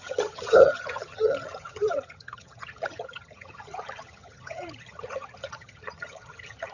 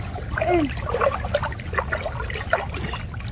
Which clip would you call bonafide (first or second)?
second